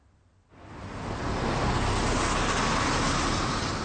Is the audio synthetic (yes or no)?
no